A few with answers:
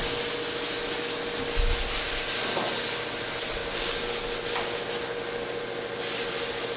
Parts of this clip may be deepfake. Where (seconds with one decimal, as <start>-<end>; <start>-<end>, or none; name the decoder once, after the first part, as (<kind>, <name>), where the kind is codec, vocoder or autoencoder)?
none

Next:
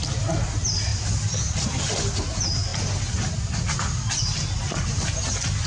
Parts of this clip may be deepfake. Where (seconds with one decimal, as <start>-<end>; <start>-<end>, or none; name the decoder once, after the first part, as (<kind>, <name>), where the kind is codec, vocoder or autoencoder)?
none

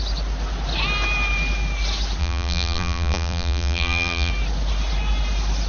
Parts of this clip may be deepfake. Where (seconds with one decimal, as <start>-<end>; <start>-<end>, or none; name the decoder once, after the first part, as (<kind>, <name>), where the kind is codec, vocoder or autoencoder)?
2.2-4.3 (vocoder, BigVGAN v2)